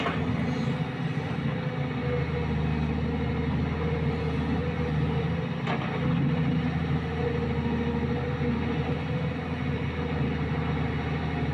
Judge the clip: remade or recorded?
recorded